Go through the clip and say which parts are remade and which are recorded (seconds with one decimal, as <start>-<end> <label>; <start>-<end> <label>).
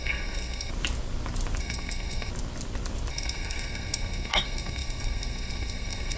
0.0-0.7 remade; 0.7-1.6 recorded; 1.6-2.3 remade; 2.3-3.1 recorded; 3.1-6.2 remade